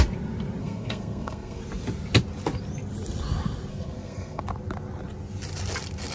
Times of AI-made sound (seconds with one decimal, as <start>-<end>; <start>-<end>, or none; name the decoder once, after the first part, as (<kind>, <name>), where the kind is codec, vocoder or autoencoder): 0.6-1.6 (codec, SNAC); 3.7-4.4